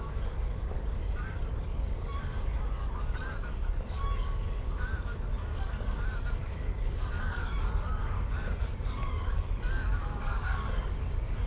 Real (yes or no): no